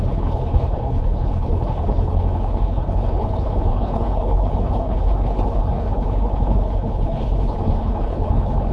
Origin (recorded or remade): remade